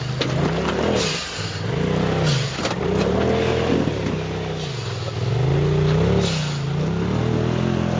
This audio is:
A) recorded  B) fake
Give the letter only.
A